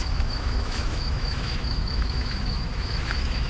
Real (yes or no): no